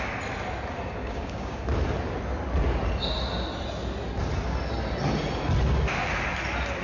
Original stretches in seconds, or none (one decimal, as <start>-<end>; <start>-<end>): 0.0-1.0; 1.6-6.8